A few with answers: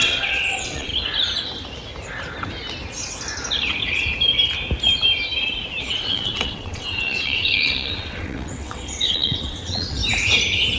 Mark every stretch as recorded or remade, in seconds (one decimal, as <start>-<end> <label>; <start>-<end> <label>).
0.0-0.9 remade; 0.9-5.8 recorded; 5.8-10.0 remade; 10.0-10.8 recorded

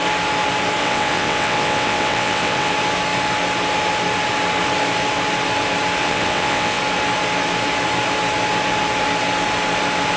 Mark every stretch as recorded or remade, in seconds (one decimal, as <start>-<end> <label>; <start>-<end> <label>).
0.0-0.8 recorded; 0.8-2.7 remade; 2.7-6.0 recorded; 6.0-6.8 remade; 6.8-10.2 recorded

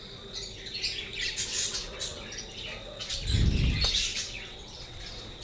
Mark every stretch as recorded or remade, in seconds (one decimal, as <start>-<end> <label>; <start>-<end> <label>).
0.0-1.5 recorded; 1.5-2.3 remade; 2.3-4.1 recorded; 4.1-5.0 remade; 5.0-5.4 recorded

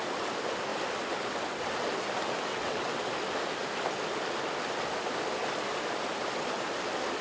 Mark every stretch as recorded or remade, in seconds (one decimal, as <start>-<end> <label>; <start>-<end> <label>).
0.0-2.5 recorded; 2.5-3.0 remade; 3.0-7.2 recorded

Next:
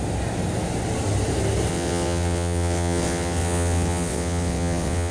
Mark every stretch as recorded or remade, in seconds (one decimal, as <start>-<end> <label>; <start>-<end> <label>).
0.0-1.7 recorded; 1.7-5.1 remade